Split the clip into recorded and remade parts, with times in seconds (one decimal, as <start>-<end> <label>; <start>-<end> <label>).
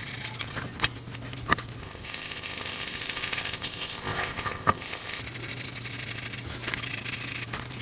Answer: 0.0-1.8 recorded; 1.8-5.2 remade; 5.2-7.8 recorded